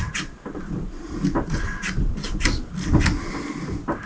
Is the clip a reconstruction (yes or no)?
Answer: no